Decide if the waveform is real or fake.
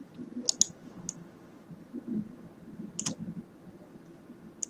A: real